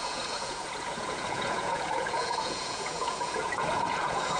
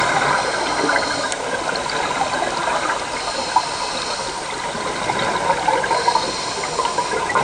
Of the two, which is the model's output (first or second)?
first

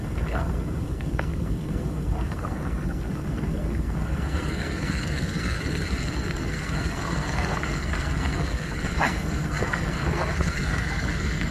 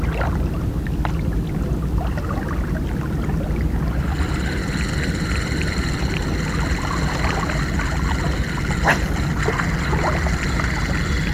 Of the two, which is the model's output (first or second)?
first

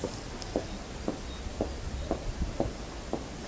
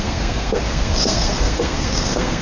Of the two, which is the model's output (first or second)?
second